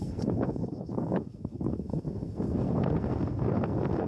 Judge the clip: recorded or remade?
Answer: remade